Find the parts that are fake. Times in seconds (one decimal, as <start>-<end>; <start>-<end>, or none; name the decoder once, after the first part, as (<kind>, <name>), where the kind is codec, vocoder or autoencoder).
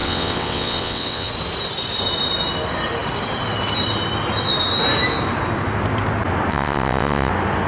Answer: 0.0-1.3 (vocoder, WaveNeXt); 6.5-7.3